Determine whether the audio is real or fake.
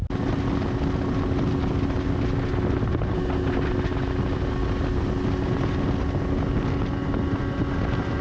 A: real